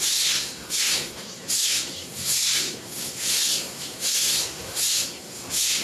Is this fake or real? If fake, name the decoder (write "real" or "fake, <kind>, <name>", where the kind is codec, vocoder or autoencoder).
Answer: fake, codec, SNAC